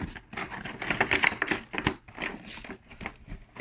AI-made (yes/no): no